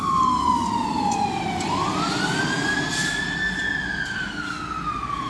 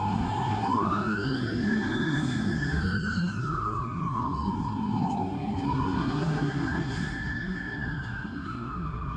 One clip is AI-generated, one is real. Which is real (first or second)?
first